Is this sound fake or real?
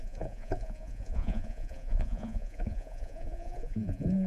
fake